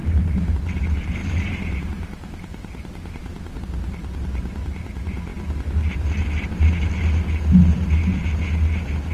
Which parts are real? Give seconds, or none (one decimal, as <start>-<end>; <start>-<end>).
0.5-1.2; 3.6-9.1